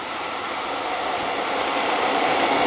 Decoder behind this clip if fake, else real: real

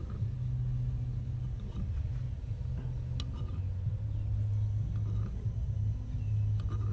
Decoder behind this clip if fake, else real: real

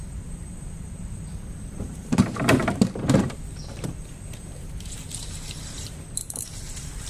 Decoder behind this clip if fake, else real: fake, vocoder, BigVGAN v2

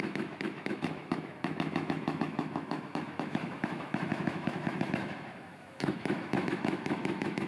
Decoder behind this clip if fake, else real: fake, autoencoder, DAC-VAE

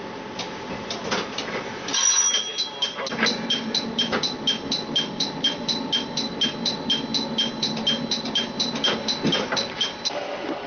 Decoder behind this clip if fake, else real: real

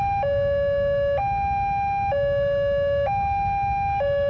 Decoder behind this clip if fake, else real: real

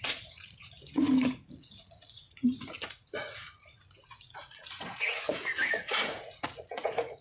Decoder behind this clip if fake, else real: fake, vocoder, Vocos